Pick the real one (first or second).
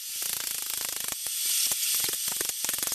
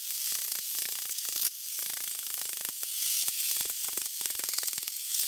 first